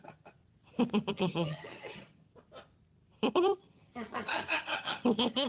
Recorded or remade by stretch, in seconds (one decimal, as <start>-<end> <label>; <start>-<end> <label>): 0.0-0.4 remade; 0.4-1.1 recorded; 1.1-2.3 remade; 2.3-3.3 recorded; 3.3-5.5 remade